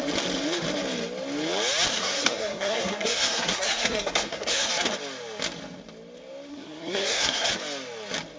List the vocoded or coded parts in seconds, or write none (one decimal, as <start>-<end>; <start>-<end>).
1.9-4.7; 6.5-7.5